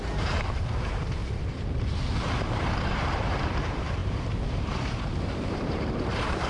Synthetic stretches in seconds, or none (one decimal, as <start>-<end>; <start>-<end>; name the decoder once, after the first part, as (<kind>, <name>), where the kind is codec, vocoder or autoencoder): 0.0-1.2 (vocoder, BigVGAN v2); 2.2-6.5